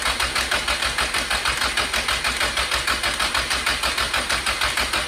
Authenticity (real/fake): real